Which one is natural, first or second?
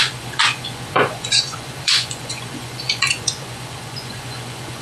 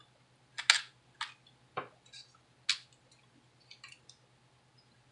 second